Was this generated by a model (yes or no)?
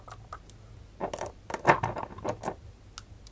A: no